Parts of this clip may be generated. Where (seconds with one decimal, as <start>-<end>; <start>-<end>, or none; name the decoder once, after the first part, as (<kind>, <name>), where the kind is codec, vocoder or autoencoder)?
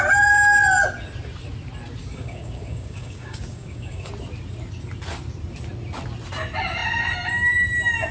2.0-4.1 (codec, DAC)